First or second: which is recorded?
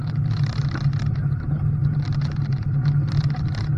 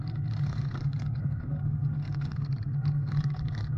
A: first